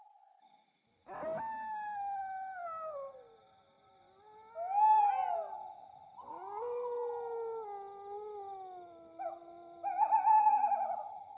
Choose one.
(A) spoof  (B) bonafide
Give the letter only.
B